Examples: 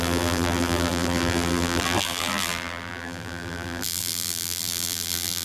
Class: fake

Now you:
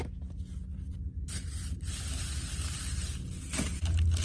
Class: real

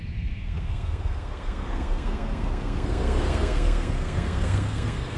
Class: fake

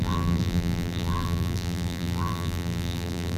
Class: fake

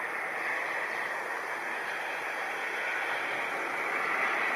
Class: fake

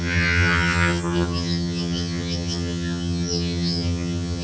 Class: fake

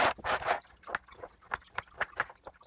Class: real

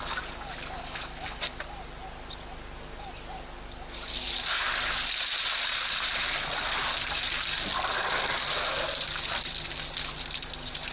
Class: real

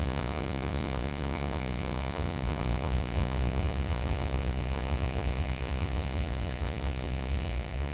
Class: fake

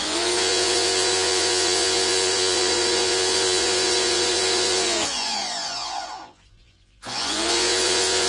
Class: fake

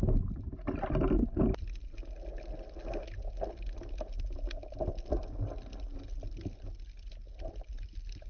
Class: real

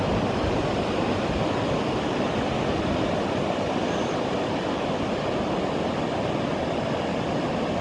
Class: real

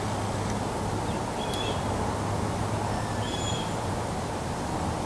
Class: real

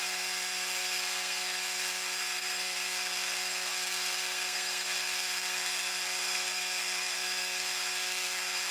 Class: fake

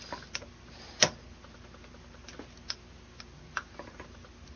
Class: real